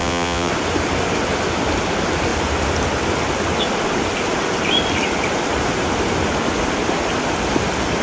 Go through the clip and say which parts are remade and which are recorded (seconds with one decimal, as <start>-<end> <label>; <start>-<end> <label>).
0.0-0.5 remade; 0.5-8.0 recorded